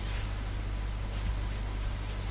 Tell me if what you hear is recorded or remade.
recorded